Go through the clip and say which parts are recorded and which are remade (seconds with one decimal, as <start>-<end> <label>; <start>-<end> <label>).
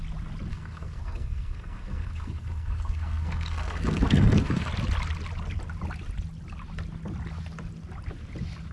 0.0-0.5 recorded; 0.5-4.7 remade; 4.7-8.7 recorded